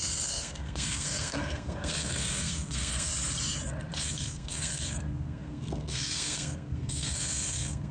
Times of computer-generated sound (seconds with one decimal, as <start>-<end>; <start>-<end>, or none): 0.0-3.1; 4.0-7.9